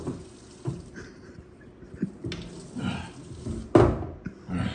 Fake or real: real